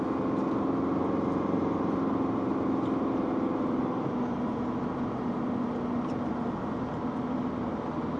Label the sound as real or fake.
real